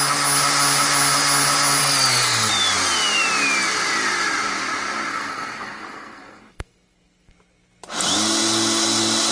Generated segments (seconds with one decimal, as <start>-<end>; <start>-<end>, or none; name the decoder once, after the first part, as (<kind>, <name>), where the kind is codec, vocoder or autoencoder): 1.8-2.5 (codec, SNAC); 5.1-7.3